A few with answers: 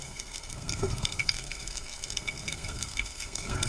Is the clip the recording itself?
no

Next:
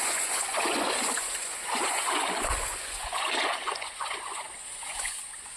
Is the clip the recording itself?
no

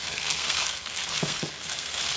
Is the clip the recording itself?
no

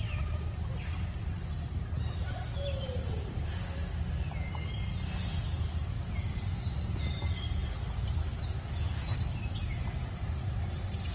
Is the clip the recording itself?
yes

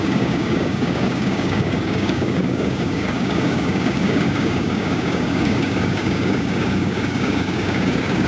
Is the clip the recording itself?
no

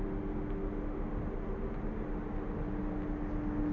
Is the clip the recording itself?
yes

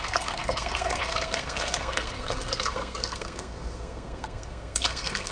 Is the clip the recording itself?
no